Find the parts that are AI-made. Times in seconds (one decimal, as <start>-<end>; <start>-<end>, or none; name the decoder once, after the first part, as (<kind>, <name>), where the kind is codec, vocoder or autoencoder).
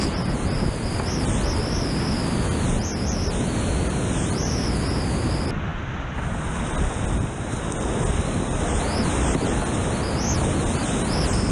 5.7-6.4 (vocoder, BigVGAN v2)